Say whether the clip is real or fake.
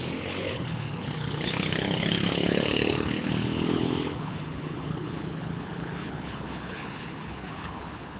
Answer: fake